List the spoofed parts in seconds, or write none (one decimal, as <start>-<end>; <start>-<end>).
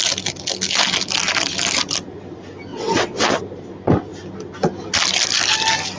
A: 2.7-3.3